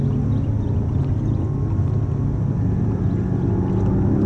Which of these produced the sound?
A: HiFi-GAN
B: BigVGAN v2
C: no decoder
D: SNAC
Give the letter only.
C